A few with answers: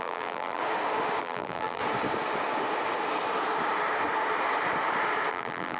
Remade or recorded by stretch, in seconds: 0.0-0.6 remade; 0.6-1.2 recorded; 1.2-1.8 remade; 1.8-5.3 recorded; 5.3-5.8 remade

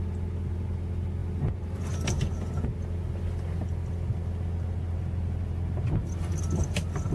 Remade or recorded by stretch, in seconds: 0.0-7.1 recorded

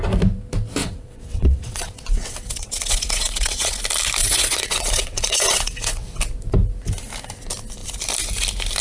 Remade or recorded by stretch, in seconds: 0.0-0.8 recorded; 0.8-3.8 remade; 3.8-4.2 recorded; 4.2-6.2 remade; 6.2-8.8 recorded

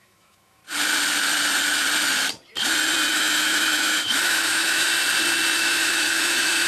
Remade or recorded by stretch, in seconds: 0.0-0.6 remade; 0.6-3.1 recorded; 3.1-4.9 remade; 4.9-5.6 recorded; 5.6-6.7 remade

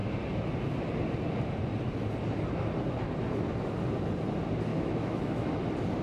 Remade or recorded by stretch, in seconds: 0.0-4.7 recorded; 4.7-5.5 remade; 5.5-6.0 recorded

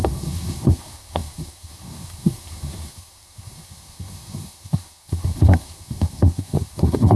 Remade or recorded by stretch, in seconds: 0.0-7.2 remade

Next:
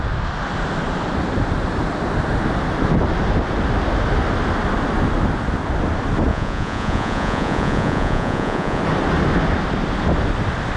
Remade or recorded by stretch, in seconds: 0.0-6.3 recorded; 6.3-8.8 remade; 8.8-10.8 recorded